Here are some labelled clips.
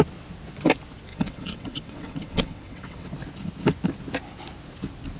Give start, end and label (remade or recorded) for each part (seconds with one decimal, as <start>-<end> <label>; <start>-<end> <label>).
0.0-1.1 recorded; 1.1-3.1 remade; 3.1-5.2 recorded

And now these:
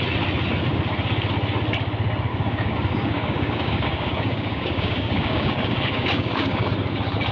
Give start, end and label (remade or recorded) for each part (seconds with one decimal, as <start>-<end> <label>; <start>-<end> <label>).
0.0-2.3 recorded; 2.3-6.7 remade; 6.7-7.3 recorded

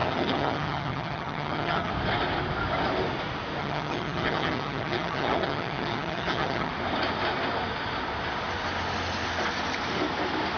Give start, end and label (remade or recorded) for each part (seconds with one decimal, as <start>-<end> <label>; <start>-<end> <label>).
0.0-1.9 remade; 1.9-3.6 recorded; 3.6-6.7 remade; 6.7-10.6 recorded